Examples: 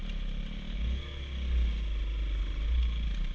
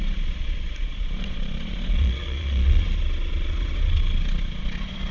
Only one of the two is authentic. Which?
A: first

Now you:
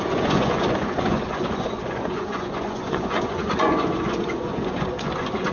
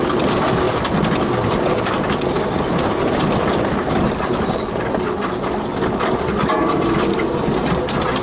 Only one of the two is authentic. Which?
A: second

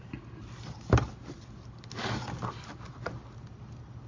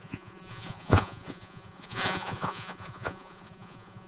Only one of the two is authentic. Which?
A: first